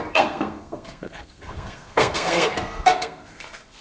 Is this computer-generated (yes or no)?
yes